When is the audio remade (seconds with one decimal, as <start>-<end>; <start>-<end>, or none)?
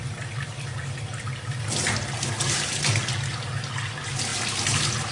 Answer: none